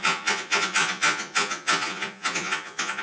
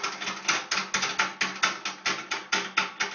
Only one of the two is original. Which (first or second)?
second